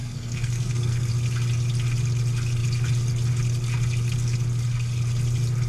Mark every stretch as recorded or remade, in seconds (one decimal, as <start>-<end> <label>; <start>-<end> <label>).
0.0-1.1 remade; 1.1-5.7 recorded